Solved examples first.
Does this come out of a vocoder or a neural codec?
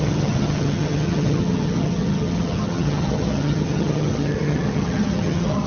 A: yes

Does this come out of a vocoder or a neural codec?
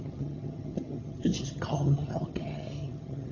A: yes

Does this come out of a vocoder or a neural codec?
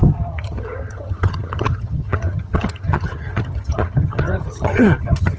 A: yes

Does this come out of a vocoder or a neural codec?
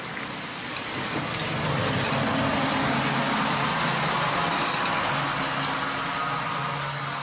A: no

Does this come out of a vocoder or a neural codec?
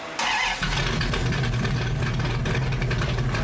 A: no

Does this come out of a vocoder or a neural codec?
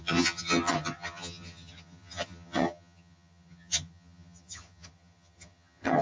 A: yes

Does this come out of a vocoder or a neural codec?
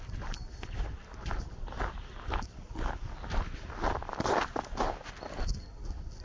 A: no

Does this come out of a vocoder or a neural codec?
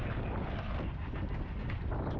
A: no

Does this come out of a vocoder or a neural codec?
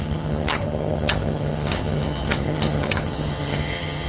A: yes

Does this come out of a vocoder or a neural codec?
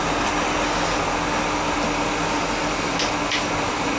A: no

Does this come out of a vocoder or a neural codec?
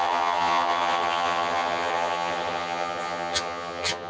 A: yes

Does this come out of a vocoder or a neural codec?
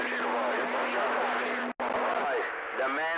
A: no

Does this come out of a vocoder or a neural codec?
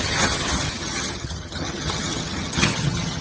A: yes